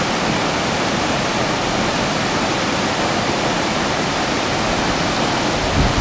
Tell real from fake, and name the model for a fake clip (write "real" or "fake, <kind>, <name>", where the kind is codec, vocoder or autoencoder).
real